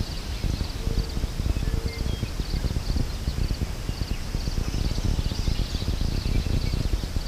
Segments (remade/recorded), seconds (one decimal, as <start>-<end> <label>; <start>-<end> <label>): 0.0-7.3 recorded